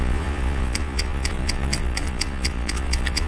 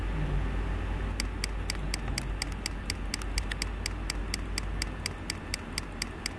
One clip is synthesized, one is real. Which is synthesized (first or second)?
first